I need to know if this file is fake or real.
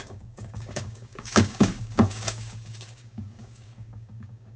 fake